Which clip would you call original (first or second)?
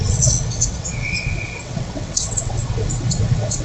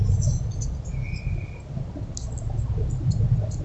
second